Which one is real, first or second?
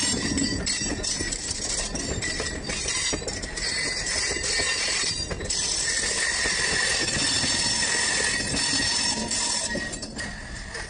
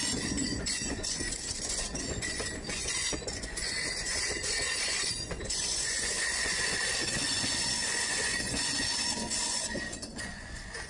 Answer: first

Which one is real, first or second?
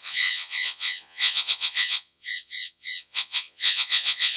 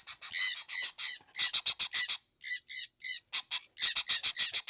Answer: second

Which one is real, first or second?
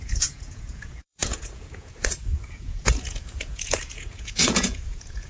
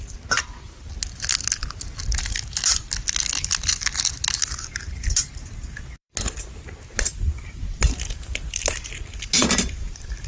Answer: second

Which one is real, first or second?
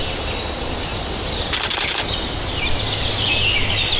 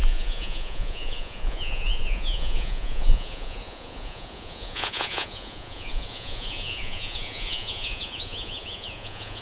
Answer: first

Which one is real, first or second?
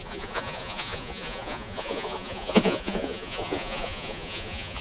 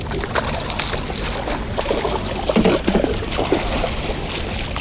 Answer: second